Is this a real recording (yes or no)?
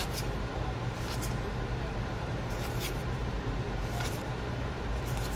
no